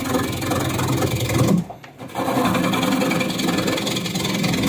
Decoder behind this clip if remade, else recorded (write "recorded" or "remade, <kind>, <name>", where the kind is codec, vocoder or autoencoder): recorded